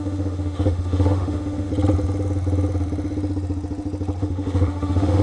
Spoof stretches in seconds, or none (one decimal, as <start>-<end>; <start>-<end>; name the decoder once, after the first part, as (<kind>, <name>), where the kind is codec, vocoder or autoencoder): 0.0-1.7 (autoencoder, DAC-VAE); 4.2-5.2